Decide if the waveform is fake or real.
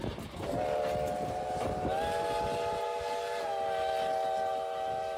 real